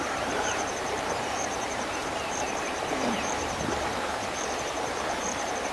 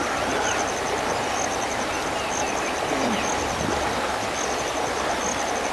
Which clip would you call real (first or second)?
second